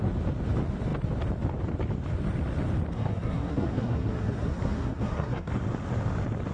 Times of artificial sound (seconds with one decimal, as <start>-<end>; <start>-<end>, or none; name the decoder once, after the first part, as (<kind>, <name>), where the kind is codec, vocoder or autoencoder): 2.9-5.5 (codec, SNAC)